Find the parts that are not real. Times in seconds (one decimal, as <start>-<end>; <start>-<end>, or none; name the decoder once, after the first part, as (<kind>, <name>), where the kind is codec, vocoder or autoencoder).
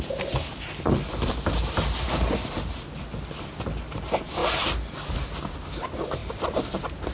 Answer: none